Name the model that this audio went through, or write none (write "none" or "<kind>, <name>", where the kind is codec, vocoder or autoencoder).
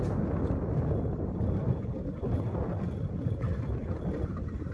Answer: none